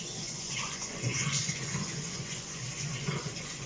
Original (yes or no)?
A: no